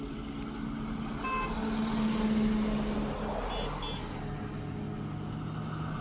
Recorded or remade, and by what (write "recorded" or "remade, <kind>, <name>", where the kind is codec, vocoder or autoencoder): recorded